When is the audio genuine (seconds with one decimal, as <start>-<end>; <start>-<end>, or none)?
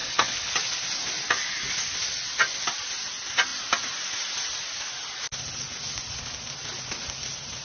0.5-7.6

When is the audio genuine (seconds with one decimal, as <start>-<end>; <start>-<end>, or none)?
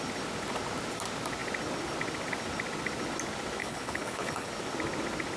0.0-3.6; 4.5-5.4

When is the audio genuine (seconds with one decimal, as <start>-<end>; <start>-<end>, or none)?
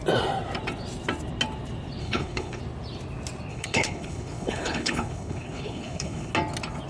0.0-2.0; 2.6-3.5; 6.3-6.9